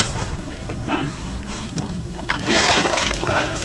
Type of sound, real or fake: fake